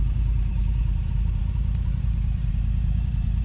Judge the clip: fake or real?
fake